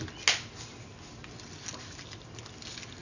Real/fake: real